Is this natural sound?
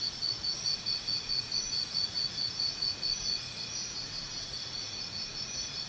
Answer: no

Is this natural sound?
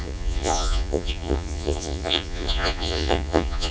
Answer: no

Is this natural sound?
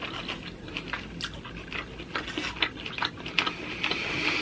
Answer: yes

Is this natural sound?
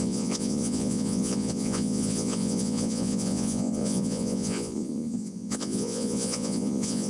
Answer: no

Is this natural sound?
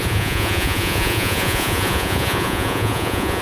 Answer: no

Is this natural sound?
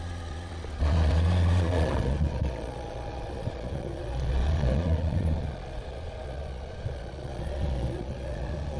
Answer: no